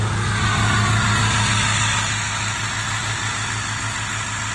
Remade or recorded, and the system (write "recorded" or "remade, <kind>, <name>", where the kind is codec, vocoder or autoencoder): recorded